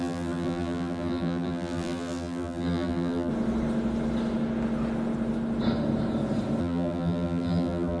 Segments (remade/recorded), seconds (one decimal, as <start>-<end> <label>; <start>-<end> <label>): 0.0-3.3 remade; 3.3-6.6 recorded; 6.6-8.0 remade